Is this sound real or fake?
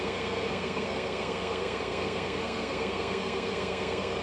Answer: fake